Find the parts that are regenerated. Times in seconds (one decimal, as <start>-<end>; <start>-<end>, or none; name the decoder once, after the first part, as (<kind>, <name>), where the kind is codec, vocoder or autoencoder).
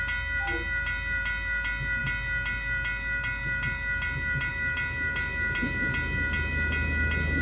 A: none